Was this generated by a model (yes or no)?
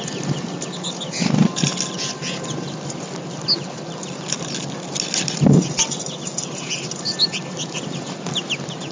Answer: no